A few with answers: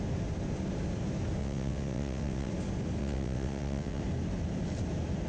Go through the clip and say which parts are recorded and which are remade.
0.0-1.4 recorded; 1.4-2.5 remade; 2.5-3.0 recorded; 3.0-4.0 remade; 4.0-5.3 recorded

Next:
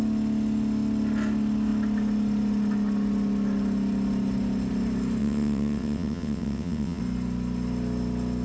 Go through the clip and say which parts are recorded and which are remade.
0.0-5.2 recorded; 5.2-7.0 remade; 7.0-8.4 recorded